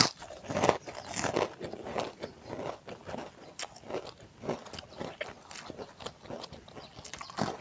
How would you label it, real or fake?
real